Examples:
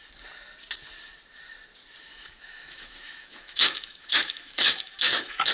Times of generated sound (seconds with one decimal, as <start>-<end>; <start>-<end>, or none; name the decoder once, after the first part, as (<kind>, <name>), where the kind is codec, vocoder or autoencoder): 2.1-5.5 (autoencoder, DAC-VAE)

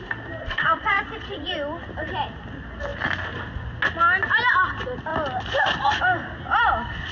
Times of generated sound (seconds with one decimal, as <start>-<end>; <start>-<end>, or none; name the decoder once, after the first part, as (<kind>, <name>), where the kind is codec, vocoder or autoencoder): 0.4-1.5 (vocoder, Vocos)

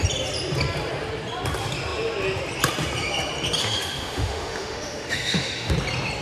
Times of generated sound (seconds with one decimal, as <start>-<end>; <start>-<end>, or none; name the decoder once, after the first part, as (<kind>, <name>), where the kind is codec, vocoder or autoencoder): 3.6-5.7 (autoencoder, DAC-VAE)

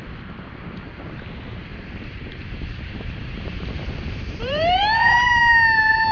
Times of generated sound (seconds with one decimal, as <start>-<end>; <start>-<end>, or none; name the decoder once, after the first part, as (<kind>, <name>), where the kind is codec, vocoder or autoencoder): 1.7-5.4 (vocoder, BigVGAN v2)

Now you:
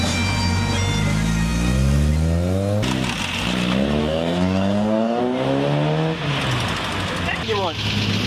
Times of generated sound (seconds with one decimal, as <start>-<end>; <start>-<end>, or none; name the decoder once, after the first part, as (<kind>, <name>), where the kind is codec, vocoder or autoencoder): 4.0-5.2 (codec, DAC)

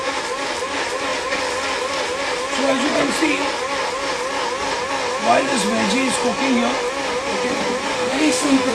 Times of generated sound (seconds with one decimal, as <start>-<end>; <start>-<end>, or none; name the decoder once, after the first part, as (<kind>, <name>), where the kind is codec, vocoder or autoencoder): 7.9-8.7 (autoencoder, DAC-VAE)